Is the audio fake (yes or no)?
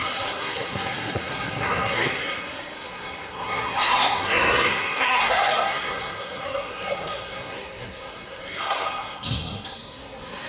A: yes